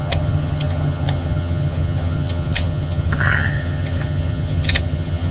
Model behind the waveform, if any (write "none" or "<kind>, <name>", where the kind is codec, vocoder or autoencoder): vocoder, HiFi-GAN